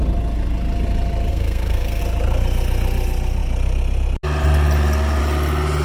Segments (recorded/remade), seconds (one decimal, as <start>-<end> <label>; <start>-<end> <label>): 0.0-1.3 recorded; 1.3-2.0 remade; 2.0-5.8 recorded